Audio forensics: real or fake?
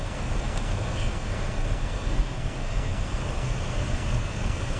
fake